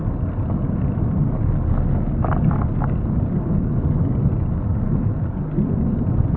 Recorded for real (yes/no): yes